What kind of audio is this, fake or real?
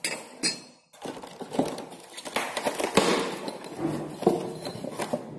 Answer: real